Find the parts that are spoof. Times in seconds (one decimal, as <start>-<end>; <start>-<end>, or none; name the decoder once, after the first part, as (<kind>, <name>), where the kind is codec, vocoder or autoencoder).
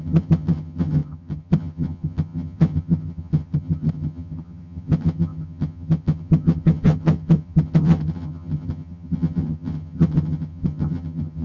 0.0-11.4 (vocoder, HiFi-GAN)